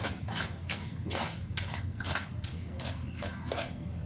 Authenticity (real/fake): fake